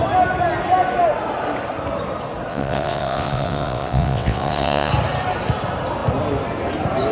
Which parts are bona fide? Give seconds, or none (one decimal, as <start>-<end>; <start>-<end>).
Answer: 0.0-2.5; 4.9-7.1